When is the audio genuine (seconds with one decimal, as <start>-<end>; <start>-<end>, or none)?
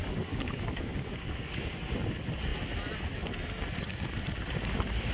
1.7-5.1